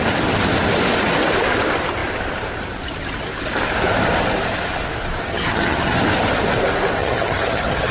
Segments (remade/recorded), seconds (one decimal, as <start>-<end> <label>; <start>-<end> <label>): 0.0-5.3 recorded; 5.3-6.0 remade; 6.0-7.0 recorded; 7.0-7.9 remade